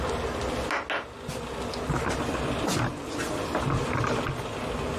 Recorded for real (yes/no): yes